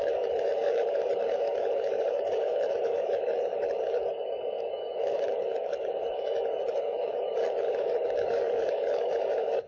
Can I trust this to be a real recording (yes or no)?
no